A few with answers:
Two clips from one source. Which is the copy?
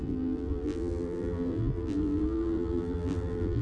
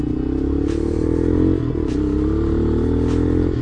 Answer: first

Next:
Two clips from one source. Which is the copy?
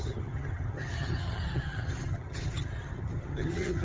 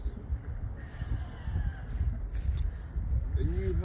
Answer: first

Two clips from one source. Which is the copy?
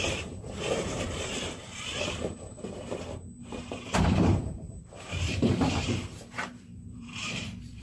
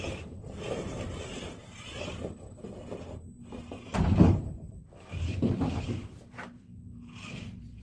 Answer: first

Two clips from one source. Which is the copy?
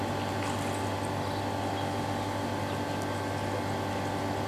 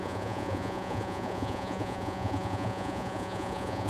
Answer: second